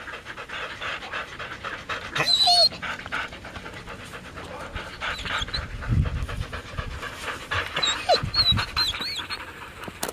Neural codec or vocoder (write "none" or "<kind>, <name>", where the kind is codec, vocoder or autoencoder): none